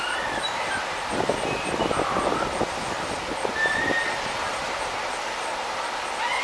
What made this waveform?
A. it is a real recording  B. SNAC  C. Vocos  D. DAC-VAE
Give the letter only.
A